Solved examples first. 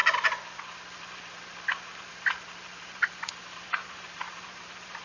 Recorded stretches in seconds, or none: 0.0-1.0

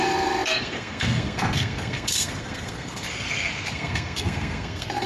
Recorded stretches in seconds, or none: none

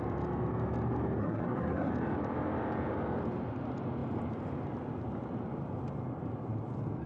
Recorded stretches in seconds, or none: 0.0-1.2; 1.9-7.1

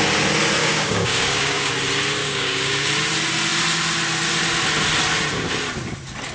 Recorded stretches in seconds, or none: 0.0-0.6; 1.7-2.2; 2.9-6.3